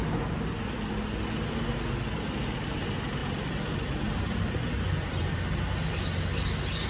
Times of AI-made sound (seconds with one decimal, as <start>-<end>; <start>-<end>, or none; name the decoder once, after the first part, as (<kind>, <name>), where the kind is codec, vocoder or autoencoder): none